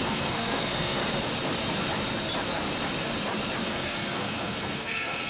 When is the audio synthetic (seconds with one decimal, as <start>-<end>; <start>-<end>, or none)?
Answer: 0.0-1.0; 3.6-5.3